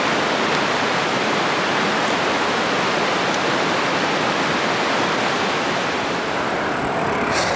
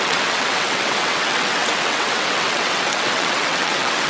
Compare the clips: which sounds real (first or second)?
first